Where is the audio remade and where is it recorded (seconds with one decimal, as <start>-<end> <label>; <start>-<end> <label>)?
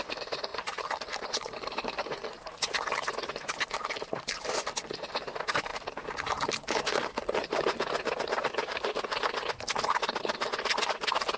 0.0-0.5 recorded; 0.5-1.9 remade; 1.9-11.4 recorded